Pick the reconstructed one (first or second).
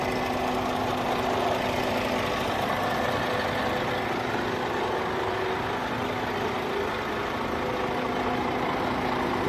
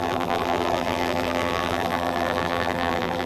second